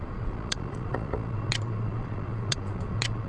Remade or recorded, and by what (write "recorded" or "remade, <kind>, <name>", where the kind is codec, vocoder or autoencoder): remade, vocoder, Vocos